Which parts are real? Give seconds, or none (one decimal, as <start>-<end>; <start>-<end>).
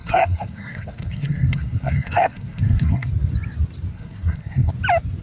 3.1-3.9; 4.7-5.2